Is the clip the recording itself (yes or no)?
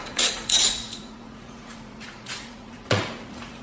no